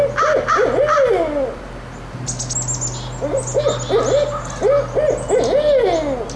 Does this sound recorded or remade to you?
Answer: recorded